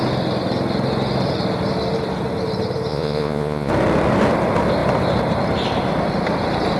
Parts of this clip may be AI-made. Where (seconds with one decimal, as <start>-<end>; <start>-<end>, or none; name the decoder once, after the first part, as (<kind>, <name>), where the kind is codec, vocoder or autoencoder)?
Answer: 2.9-3.7 (vocoder, Vocos)

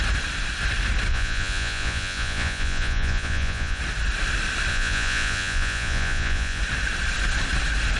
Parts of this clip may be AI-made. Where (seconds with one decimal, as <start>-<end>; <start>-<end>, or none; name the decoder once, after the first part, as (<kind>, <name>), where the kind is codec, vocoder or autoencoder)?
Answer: 1.1-3.8 (vocoder, Vocos); 4.7-6.6